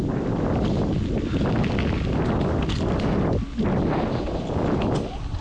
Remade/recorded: recorded